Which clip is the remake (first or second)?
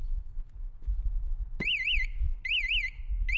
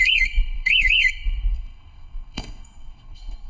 second